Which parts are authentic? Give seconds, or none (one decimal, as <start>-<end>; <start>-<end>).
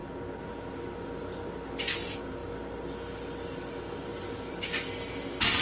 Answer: 0.0-5.6